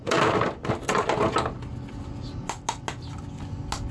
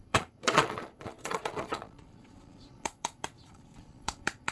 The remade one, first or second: second